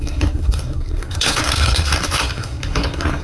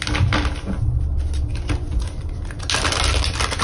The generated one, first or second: first